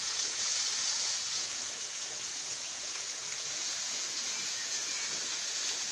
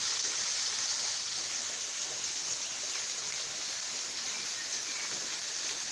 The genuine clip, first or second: second